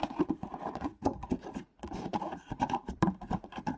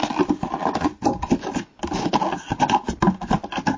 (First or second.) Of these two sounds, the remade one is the first